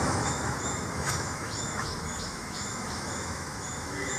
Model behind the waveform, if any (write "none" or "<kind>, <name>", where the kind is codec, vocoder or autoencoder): autoencoder, DAC-VAE